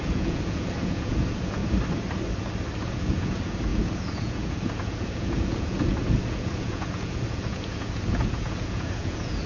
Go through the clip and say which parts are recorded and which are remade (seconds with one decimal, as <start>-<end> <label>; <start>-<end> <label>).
0.0-1.6 remade; 1.6-2.8 recorded; 2.8-9.5 remade